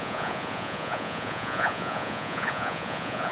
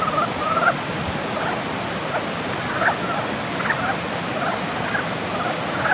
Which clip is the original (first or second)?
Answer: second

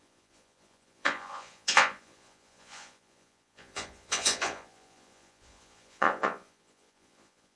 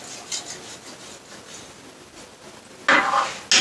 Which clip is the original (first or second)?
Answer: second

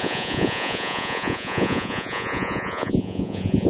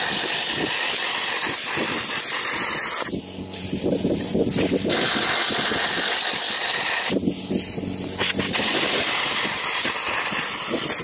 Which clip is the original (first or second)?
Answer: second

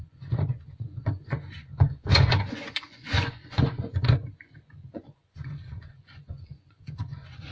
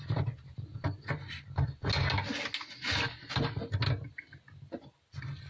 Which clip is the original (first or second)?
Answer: second